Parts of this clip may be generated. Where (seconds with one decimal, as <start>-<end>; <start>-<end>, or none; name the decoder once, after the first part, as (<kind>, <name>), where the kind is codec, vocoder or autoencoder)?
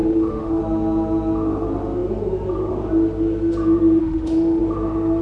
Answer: 0.0-0.6 (autoencoder, DAC-VAE); 4.0-4.6